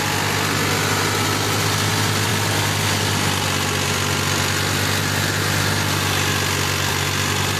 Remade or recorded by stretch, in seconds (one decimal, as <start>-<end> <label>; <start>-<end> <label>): 0.0-7.6 recorded